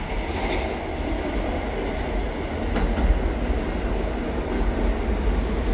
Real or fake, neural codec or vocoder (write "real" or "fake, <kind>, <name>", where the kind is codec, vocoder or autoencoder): real